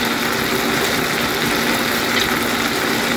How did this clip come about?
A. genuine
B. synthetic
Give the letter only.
A